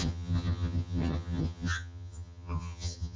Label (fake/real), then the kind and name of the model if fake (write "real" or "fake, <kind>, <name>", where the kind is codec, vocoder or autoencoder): fake, vocoder, HiFi-GAN